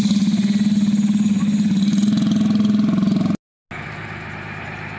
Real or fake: real